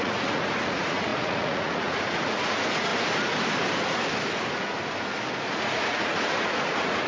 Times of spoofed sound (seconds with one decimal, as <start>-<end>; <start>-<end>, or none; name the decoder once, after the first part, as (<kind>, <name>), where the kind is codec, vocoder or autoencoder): 0.0-2.9 (vocoder, Vocos); 5.6-7.1